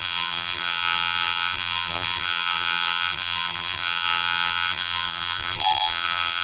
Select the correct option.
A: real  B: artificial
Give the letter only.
B